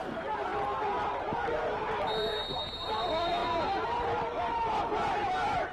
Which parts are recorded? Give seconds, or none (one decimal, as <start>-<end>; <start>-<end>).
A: 0.0-5.7